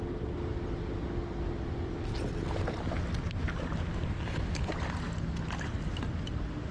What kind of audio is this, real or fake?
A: real